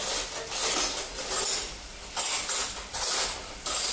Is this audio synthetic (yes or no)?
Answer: no